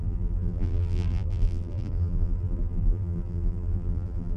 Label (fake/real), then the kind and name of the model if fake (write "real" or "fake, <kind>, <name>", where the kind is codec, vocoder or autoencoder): fake, vocoder, BigVGAN v2